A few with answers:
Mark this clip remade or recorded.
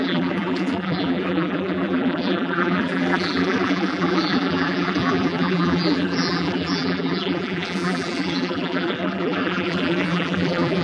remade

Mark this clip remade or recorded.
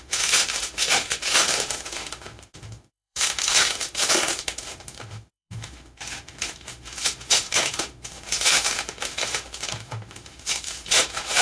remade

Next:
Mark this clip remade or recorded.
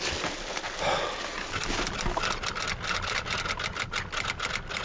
recorded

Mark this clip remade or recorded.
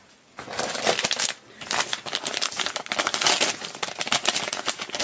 recorded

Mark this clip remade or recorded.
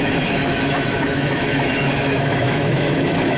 remade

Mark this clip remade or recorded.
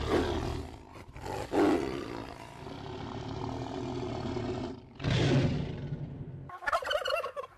recorded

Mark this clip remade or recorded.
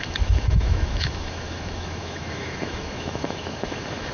remade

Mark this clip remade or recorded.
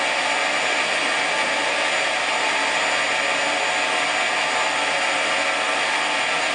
recorded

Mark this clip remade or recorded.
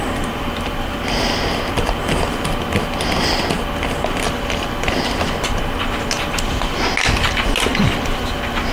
recorded